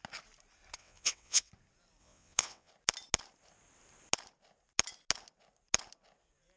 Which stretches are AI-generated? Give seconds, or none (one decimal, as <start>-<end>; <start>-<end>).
0.8-1.5; 2.0-2.7